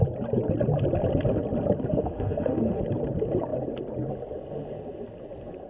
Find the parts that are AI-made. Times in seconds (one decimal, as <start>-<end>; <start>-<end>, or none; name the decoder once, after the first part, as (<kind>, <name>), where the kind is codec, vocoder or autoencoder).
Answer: 1.9-2.8 (autoencoder, DAC-VAE)